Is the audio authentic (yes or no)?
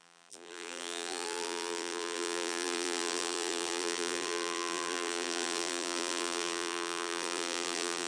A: no